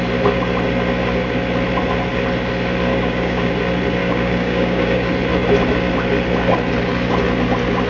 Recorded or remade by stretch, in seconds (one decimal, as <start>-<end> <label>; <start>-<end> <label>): 0.0-2.9 recorded; 2.9-3.5 remade; 3.5-4.0 recorded; 4.0-5.1 remade; 5.1-7.9 recorded